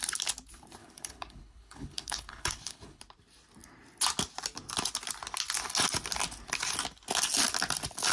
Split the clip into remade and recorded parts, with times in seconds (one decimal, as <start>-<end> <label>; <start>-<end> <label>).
0.0-0.8 recorded; 0.8-3.0 remade; 3.0-8.1 recorded